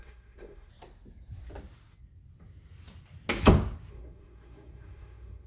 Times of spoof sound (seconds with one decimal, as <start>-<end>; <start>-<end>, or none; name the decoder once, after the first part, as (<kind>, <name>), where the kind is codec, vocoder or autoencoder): 0.0-0.7 (codec, SNAC); 3.9-5.5